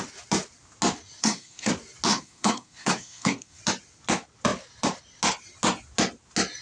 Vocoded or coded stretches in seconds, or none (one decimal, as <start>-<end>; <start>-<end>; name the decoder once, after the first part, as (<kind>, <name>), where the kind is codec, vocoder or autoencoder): 1.2-1.7 (codec, SNAC); 2.1-3.6